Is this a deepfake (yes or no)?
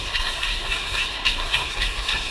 yes